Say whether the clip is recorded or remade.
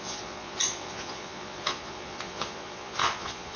remade